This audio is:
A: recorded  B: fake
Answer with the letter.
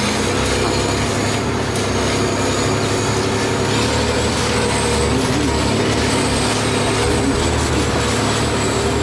A